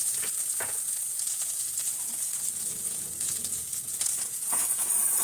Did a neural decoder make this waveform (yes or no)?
yes